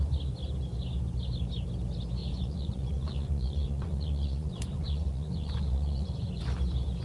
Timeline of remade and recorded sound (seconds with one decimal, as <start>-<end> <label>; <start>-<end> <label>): 0.0-2.2 recorded; 2.2-6.4 remade; 6.4-7.0 recorded